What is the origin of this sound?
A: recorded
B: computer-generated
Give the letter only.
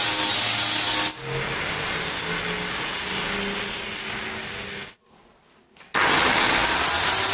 A